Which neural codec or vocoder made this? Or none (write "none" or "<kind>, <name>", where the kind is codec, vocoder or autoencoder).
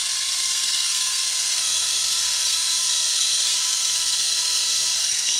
codec, SNAC